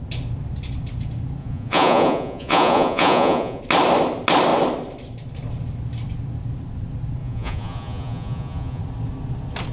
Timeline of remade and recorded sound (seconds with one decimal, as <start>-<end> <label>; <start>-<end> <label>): 0.0-1.4 recorded; 1.4-3.6 remade; 3.6-7.2 recorded; 7.2-8.8 remade; 8.8-9.7 recorded